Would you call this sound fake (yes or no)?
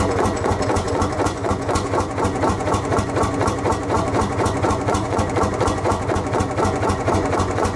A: yes